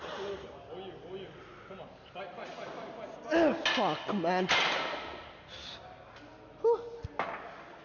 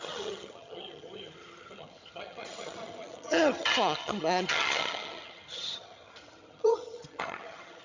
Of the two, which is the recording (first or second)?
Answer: first